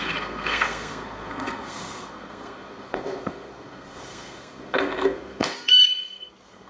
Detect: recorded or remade remade